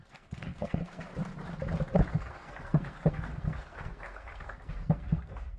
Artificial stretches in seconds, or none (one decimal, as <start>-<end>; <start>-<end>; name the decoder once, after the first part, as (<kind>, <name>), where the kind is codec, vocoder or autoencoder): 0.0-1.1 (codec, SNAC); 2.1-5.6